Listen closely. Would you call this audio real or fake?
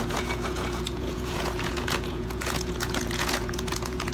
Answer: fake